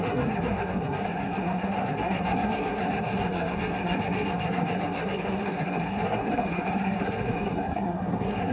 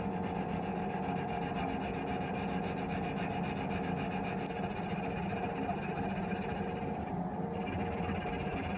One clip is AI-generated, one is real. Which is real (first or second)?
second